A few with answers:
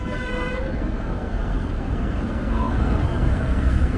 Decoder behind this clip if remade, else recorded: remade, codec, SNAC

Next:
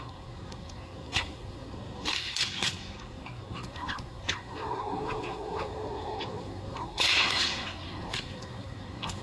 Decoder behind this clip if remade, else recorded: remade, codec, SNAC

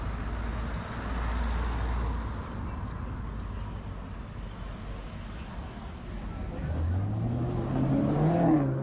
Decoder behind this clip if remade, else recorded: recorded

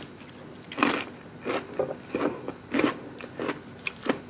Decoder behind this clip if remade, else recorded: recorded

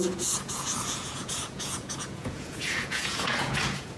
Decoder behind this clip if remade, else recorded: remade, vocoder, Vocos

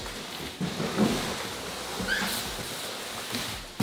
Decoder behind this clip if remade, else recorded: recorded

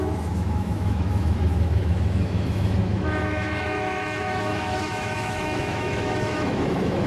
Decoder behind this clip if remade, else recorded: remade, autoencoder, DAC-VAE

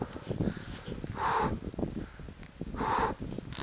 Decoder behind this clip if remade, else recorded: recorded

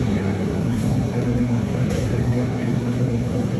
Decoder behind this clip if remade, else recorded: remade, codec, SNAC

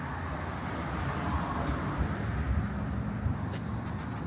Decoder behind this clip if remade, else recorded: recorded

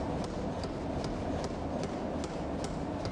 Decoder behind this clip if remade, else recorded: recorded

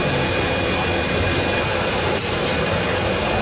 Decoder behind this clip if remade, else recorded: recorded